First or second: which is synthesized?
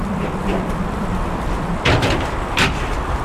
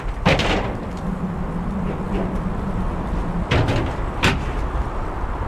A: first